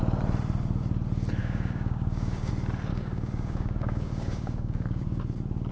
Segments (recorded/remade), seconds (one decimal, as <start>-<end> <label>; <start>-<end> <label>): 0.0-1.4 recorded; 1.4-2.5 remade; 2.5-2.9 recorded; 2.9-5.2 remade; 5.2-5.7 recorded

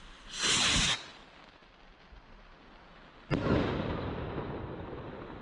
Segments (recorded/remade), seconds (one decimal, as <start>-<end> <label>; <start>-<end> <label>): 0.0-5.4 recorded

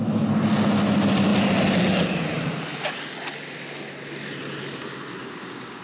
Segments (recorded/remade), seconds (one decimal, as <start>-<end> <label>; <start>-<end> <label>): 0.0-5.2 recorded; 5.2-5.8 remade